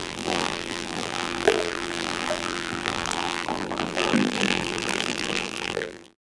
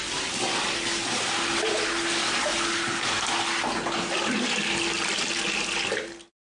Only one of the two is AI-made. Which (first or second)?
first